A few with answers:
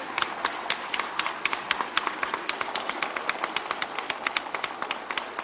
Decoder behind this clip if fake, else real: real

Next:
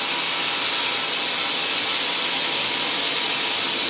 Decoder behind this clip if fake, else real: real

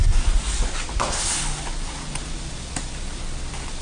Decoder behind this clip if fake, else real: real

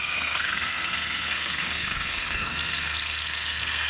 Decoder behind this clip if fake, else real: fake, codec, SNAC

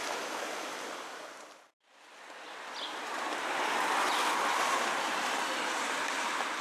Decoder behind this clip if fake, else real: fake, vocoder, BigVGAN v2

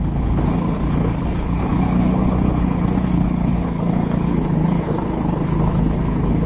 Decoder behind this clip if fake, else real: fake, codec, HILCodec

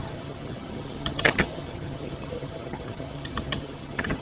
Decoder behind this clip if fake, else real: fake, vocoder, HiFi-GAN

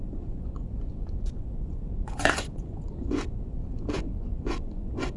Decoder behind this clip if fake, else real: fake, vocoder, Vocos